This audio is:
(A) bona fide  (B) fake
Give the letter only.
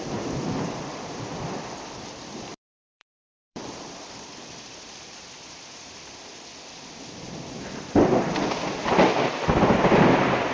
B